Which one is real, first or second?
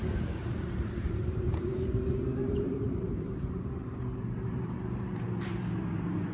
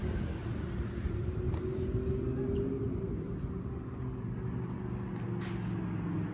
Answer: second